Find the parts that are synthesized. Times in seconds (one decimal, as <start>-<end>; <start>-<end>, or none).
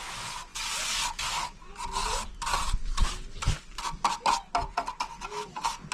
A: none